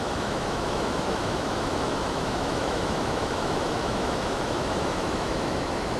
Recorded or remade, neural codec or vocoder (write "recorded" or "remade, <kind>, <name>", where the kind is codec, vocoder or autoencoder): remade, autoencoder, DAC-VAE